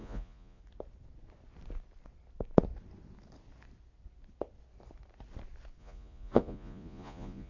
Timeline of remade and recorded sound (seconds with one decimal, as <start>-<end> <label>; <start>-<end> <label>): 0.0-0.6 remade; 0.6-5.8 recorded; 5.8-7.5 remade